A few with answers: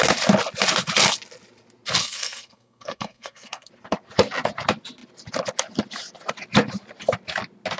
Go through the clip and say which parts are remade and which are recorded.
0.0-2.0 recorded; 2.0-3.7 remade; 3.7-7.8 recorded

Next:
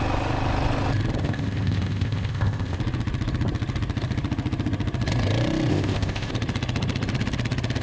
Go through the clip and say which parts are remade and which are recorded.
0.0-1.2 recorded; 1.2-2.8 remade; 2.8-5.7 recorded; 5.7-6.3 remade; 6.3-7.8 recorded

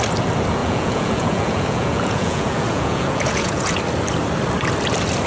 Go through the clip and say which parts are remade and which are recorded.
0.0-0.6 recorded; 0.6-3.8 remade; 3.8-5.3 recorded